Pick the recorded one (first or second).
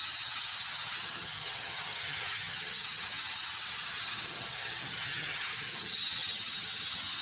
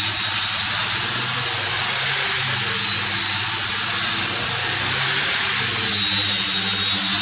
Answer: second